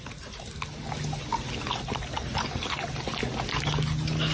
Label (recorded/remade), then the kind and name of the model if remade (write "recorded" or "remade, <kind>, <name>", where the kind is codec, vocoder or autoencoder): recorded